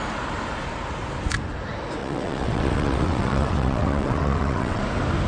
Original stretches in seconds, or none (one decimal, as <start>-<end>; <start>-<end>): 0.0-2.0; 4.8-5.3